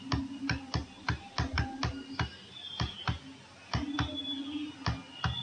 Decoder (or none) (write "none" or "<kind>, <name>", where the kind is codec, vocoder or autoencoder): none